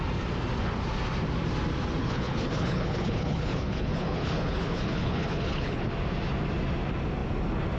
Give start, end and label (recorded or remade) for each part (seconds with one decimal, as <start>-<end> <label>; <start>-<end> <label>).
0.0-2.0 recorded; 2.0-5.9 remade; 5.9-7.8 recorded